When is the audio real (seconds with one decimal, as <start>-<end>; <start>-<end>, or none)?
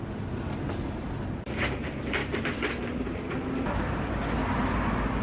0.0-5.2